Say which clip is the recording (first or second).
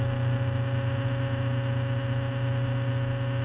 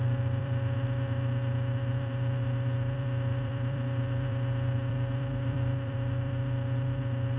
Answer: first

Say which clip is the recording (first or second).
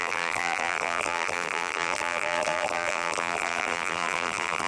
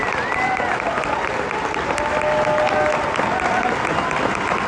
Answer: second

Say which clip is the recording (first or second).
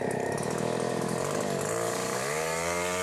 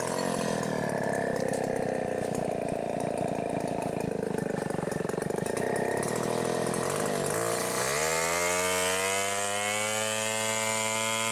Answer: second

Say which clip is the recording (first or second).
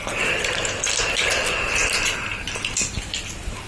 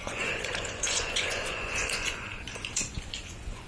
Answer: first